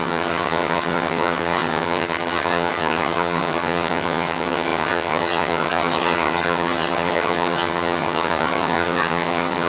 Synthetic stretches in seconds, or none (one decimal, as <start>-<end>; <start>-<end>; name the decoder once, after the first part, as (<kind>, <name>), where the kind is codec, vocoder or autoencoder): 0.0-9.7 (vocoder, HiFi-GAN)